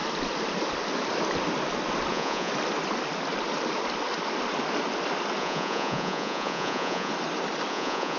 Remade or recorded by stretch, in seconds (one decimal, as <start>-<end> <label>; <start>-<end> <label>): 0.0-2.1 recorded; 2.1-2.5 remade; 2.5-5.4 recorded; 5.4-7.1 remade; 7.1-7.7 recorded; 7.7-8.2 remade